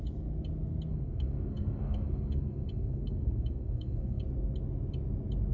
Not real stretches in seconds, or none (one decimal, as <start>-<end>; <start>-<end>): 0.9-4.2